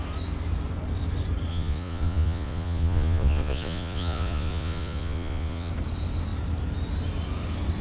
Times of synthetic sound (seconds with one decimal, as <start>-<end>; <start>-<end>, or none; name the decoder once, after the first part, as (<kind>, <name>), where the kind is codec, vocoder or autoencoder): 1.5-5.7 (vocoder, Vocos)